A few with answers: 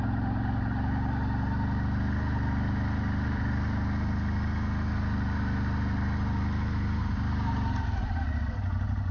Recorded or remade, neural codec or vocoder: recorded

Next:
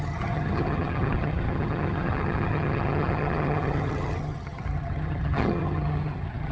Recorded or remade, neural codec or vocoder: remade, vocoder, HiFi-GAN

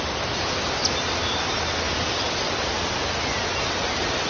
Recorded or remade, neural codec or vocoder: recorded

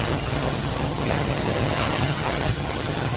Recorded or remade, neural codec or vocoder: remade, vocoder, HiFi-GAN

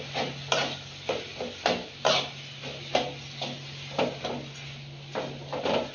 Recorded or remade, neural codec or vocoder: recorded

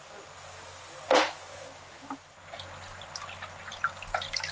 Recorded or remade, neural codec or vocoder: recorded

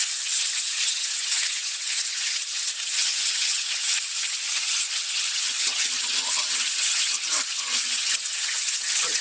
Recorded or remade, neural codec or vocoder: remade, vocoder, HiFi-GAN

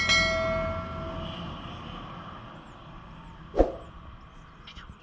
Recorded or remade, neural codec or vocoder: recorded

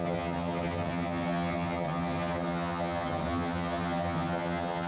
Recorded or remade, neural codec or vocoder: remade, vocoder, HiFi-GAN